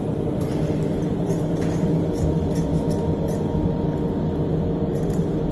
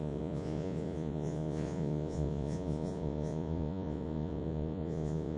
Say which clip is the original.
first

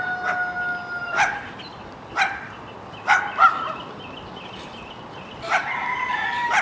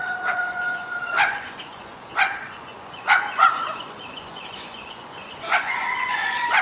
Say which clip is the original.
first